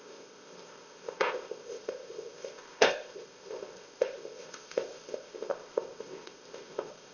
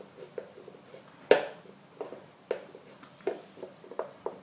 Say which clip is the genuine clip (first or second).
second